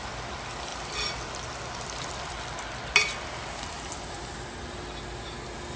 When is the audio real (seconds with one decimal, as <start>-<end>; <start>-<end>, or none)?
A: 0.0-0.7; 4.2-5.8